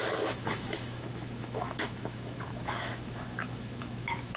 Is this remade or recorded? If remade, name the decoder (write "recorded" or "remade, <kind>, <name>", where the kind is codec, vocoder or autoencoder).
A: remade, autoencoder, DAC-VAE